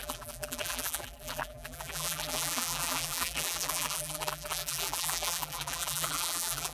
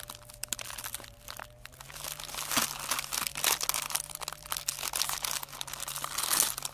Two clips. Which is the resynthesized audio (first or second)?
first